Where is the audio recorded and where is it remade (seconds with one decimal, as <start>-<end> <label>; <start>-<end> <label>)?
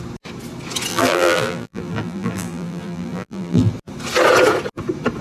0.0-0.9 recorded; 0.9-3.7 remade; 3.7-5.2 recorded